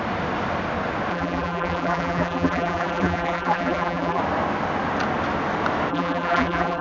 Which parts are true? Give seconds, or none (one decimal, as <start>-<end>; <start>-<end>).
0.0-1.1; 4.2-5.9